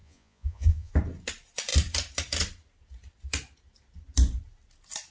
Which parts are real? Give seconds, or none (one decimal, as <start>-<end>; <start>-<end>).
0.9-5.1